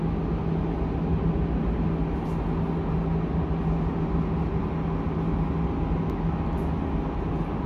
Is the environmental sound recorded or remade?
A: recorded